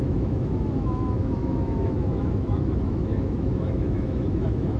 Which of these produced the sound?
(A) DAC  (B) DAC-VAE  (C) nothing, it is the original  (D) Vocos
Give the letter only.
B